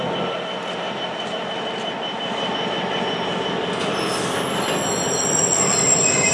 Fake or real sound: real